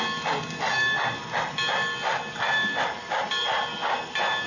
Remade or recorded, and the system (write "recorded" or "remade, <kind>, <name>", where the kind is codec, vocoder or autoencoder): recorded